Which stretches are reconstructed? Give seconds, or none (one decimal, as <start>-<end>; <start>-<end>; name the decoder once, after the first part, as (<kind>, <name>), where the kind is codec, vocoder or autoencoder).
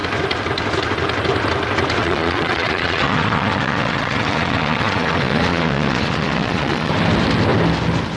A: 2.0-6.9 (vocoder, Vocos)